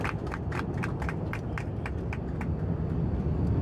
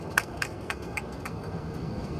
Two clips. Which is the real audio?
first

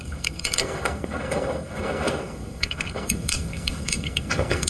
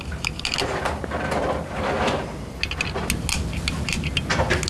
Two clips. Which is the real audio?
second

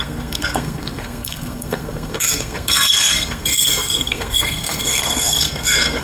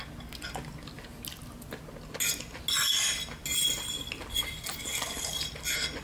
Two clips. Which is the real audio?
second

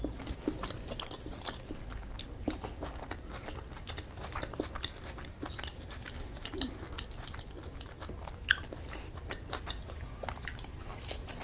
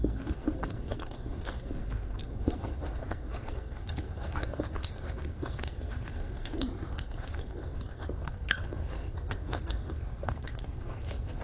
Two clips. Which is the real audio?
first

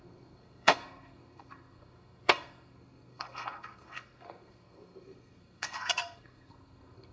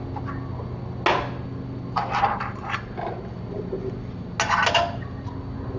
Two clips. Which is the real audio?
second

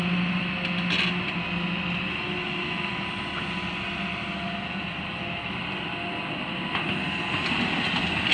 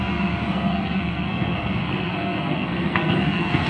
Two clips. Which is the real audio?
first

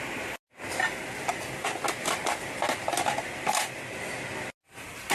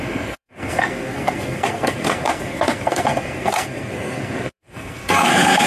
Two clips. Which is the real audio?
first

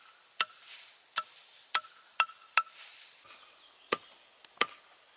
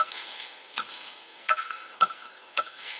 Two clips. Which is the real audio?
first